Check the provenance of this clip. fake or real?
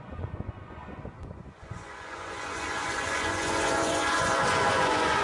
fake